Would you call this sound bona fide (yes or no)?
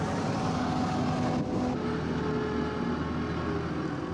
yes